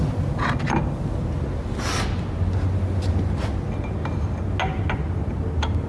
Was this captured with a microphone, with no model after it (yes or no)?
yes